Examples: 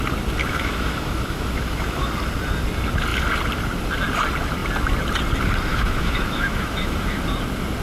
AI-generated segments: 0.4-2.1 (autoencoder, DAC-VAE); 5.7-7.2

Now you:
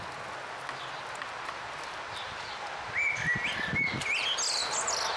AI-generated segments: none